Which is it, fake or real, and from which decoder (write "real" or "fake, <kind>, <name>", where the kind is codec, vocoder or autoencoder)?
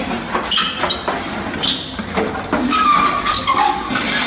real